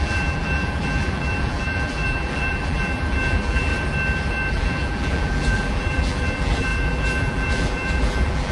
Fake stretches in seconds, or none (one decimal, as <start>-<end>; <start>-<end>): 0.0-3.7; 4.5-8.5